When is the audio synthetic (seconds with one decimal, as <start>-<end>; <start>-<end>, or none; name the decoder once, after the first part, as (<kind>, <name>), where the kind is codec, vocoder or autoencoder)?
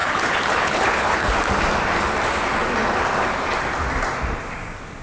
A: 0.0-1.3 (codec, HILCodec)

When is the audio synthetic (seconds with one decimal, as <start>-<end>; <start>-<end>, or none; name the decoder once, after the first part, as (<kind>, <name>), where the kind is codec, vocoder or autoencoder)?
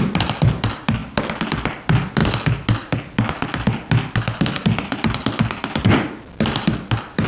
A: none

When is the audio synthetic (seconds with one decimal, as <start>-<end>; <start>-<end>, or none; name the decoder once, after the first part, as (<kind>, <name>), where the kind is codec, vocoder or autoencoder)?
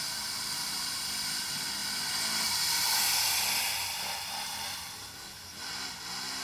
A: none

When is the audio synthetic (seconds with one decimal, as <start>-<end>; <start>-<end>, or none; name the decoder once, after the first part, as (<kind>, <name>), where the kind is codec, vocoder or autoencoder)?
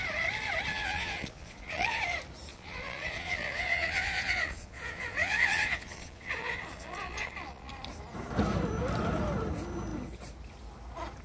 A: 0.7-2.0 (vocoder, Vocos); 2.5-7.7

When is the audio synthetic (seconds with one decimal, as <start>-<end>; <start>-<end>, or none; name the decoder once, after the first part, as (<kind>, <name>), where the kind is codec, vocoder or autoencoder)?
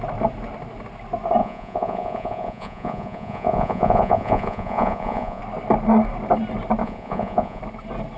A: 1.4-5.4 (vocoder, Vocos); 6.8-7.6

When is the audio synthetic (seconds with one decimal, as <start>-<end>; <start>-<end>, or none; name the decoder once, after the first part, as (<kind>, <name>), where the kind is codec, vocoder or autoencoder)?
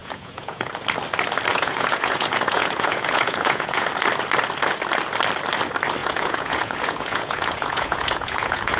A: 0.0-0.7 (vocoder, Vocos); 1.5-3.9; 6.0-8.8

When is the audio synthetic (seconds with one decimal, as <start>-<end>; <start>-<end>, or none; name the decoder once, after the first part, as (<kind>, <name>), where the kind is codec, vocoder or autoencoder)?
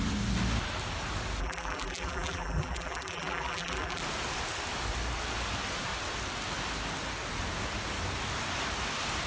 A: 1.4-4.0 (vocoder, BigVGAN v2)